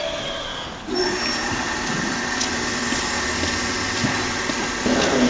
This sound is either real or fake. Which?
real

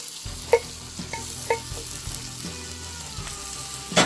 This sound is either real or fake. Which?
real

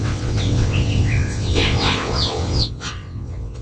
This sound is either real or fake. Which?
fake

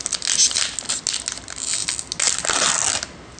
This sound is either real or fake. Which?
real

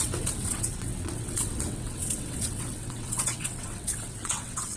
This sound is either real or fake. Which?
fake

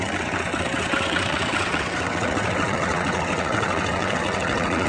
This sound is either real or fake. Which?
fake